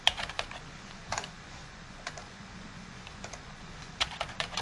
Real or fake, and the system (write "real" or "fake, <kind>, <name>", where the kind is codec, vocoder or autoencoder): fake, vocoder, Vocos